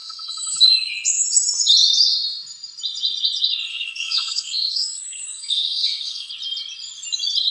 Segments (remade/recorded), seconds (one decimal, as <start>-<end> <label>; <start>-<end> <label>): 0.0-0.9 remade; 0.9-3.7 recorded; 3.7-6.3 remade; 6.3-7.5 recorded

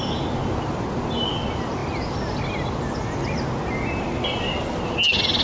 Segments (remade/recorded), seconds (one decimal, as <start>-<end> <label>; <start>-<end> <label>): 0.0-5.4 recorded

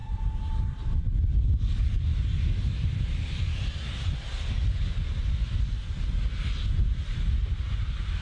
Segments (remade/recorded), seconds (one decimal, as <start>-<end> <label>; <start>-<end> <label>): 0.0-8.2 recorded

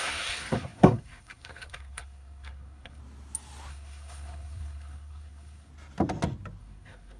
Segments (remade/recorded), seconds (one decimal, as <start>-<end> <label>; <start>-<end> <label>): 0.0-3.0 remade; 3.0-3.7 recorded; 3.7-5.7 remade; 5.7-6.6 recorded; 6.6-7.2 remade

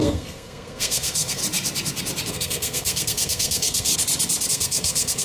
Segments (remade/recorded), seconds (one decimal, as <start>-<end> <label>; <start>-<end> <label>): 0.0-1.4 remade; 1.4-2.3 recorded; 2.3-3.9 remade; 3.9-4.5 recorded; 4.5-5.2 remade

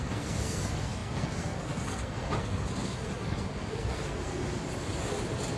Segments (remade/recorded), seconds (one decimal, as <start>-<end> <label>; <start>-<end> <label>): 0.0-4.6 remade; 4.6-5.6 recorded